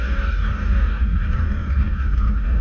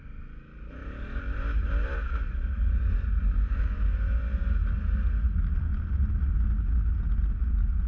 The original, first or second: second